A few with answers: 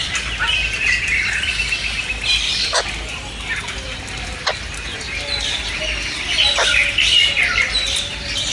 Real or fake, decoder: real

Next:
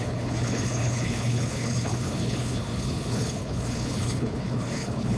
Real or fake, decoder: fake, codec, HILCodec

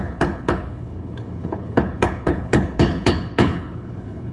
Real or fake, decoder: fake, codec, HILCodec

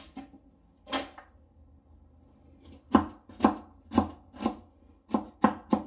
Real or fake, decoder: real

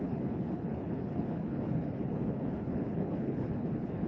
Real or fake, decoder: fake, codec, HILCodec